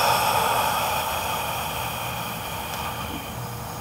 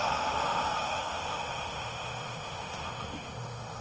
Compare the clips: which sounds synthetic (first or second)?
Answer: second